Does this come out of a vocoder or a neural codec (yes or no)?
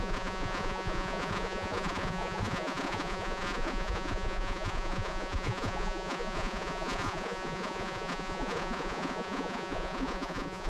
yes